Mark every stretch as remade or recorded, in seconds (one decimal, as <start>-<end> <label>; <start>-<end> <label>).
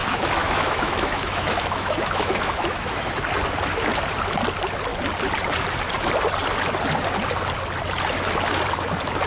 0.0-3.3 remade; 3.3-9.3 recorded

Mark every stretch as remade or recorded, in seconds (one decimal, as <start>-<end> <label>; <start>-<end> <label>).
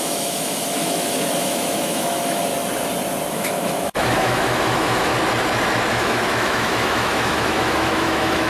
0.0-2.5 remade; 2.5-3.3 recorded; 3.3-5.1 remade; 5.1-5.9 recorded; 5.9-8.5 remade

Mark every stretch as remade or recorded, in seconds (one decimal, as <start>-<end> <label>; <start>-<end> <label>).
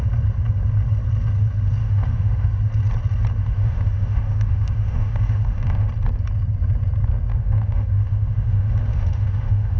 0.0-1.8 recorded; 1.8-2.6 remade; 2.6-3.4 recorded; 3.4-5.9 remade; 5.9-7.3 recorded; 7.3-9.8 remade